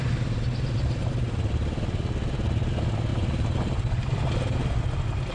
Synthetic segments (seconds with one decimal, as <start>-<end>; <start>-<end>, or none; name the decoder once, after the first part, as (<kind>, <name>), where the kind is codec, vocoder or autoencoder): none